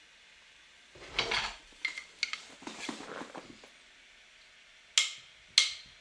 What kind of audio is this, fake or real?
real